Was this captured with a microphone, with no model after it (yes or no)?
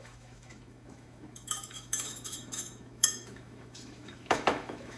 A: no